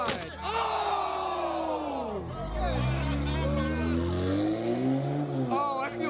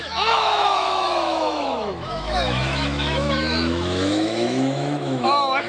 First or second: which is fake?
second